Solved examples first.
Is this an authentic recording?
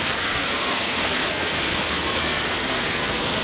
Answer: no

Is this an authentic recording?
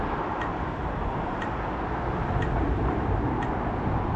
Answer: yes